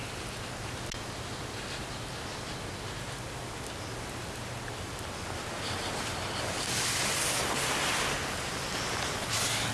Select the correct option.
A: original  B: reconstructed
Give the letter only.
A